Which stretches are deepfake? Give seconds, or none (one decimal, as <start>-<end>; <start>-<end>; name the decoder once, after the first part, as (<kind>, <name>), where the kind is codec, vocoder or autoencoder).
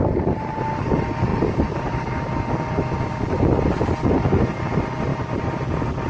1.3-3.4 (vocoder, BigVGAN v2); 5.1-6.1